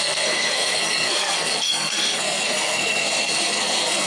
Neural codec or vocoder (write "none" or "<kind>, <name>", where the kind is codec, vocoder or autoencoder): codec, SNAC